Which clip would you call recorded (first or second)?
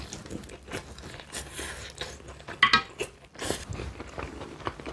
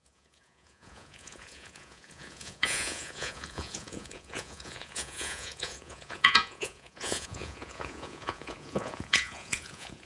first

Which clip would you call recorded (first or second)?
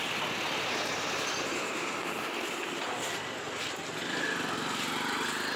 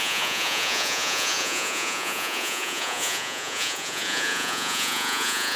first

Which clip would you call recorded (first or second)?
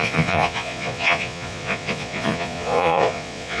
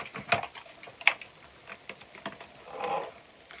second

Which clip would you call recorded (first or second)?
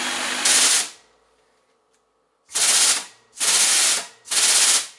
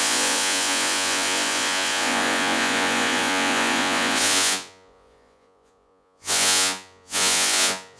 first